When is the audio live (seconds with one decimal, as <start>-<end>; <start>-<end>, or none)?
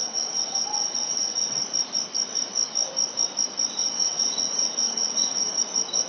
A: 1.6-3.8; 5.6-6.1